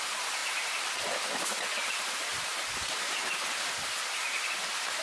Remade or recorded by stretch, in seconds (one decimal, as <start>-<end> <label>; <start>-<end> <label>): 0.0-5.0 recorded